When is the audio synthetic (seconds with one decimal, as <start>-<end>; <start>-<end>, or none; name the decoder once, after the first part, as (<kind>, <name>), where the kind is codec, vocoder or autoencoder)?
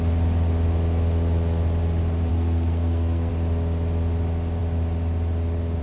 2.3-3.3 (codec, SNAC)